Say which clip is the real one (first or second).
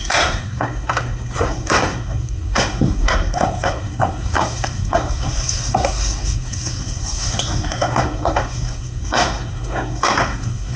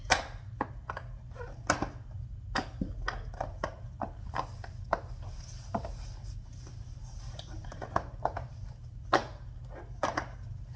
second